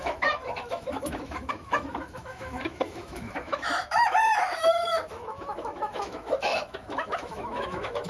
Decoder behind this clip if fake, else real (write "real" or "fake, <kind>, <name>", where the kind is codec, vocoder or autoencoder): fake, autoencoder, DAC-VAE